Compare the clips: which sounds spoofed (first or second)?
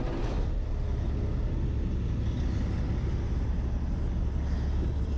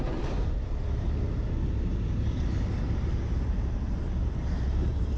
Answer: second